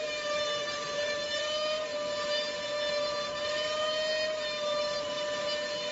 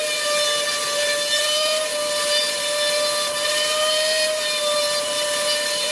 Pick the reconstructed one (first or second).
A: second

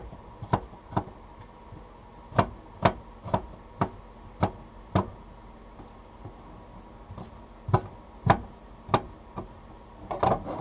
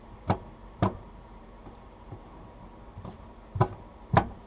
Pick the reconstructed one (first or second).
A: second